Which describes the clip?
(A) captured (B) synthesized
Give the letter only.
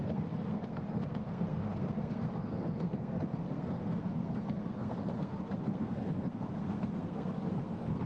B